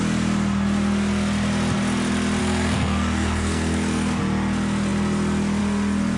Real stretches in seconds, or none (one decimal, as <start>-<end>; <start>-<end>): 0.0-2.4; 4.2-6.2